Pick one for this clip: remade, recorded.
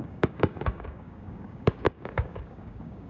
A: remade